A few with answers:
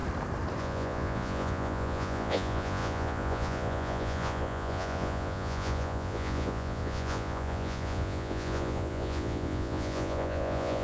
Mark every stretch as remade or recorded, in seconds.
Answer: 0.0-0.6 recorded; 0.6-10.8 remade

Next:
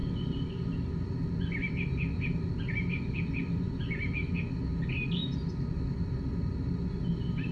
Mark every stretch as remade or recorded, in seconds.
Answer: 0.0-7.5 recorded